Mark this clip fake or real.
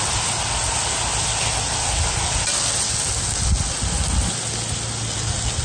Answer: real